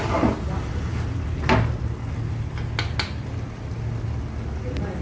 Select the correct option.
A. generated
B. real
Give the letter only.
B